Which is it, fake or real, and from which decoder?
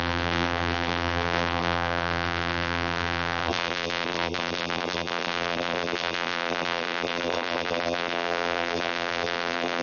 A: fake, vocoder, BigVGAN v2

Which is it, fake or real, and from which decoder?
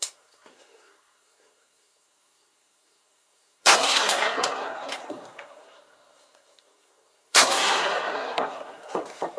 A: fake, codec, SNAC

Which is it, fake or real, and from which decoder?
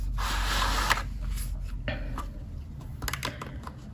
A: real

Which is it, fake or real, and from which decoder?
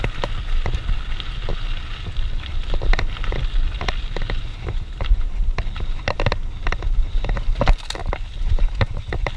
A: real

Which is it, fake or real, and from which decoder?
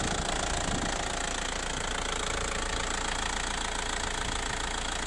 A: real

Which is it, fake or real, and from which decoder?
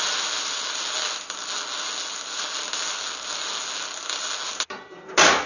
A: real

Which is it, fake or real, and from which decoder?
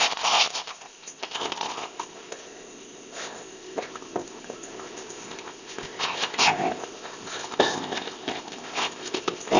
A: fake, codec, ZipCodec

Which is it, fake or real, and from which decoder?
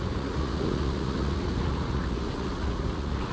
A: fake, vocoder, Vocos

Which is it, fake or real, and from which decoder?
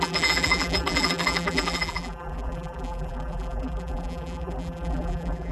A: fake, vocoder, BigVGAN v2